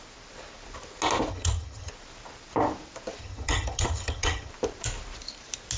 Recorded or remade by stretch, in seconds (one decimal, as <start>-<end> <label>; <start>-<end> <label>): 0.0-1.3 recorded; 1.3-1.9 remade; 1.9-3.2 recorded; 3.2-4.5 remade; 4.5-5.8 recorded